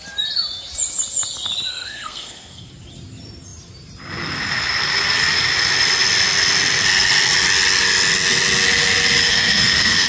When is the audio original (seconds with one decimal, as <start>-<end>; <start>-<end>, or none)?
0.0-1.7; 2.7-9.2